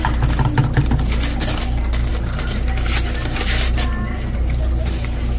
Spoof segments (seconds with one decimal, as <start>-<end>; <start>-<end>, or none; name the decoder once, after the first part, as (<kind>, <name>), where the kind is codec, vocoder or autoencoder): 2.1-5.4 (vocoder, BigVGAN v2)